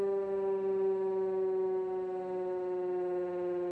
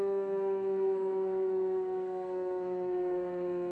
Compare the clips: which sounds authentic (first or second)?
first